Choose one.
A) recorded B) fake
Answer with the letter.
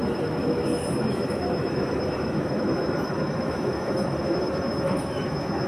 B